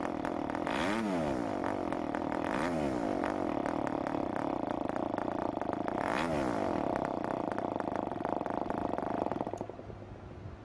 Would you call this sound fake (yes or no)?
no